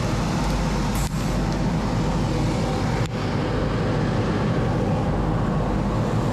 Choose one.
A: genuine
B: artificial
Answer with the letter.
A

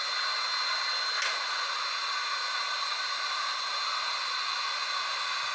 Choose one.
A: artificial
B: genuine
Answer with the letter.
B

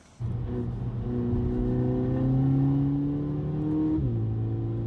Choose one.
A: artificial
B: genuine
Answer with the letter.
B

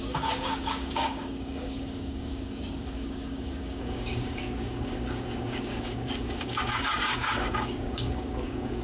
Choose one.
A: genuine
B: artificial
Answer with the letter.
B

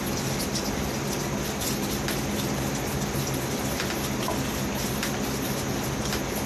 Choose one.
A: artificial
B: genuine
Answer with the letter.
B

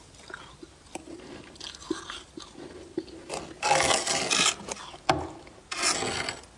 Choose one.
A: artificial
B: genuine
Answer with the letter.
B